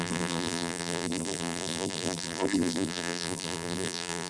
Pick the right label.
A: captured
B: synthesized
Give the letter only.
B